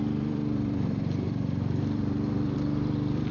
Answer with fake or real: fake